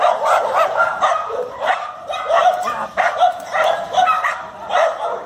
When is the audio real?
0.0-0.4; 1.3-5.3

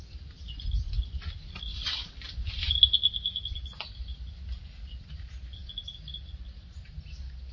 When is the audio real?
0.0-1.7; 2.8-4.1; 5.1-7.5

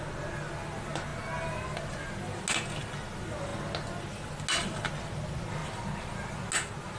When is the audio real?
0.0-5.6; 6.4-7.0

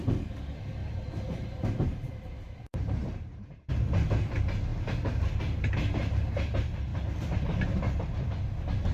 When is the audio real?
0.0-0.8; 3.7-4.7; 5.2-8.9